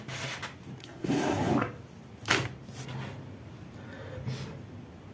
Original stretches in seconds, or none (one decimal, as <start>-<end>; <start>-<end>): 0.0-0.8; 1.5-5.1